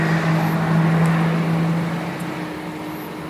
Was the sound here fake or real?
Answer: real